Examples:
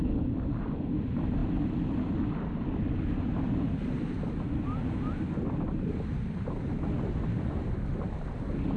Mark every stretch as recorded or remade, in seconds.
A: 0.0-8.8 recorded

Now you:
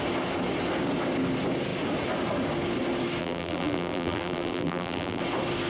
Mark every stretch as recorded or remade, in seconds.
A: 0.0-3.2 recorded; 3.2-5.2 remade; 5.2-5.7 recorded

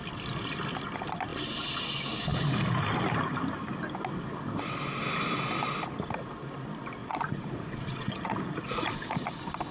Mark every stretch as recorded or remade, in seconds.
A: 0.0-7.0 recorded; 7.0-9.2 remade; 9.2-9.7 recorded